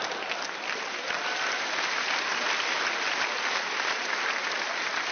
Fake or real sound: real